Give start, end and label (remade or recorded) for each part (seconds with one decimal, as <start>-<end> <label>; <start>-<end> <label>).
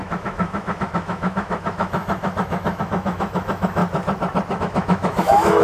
0.0-3.8 remade; 3.8-4.6 recorded; 4.6-5.6 remade